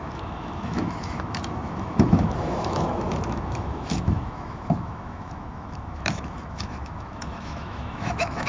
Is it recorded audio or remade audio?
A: remade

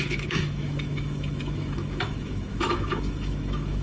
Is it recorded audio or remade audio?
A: remade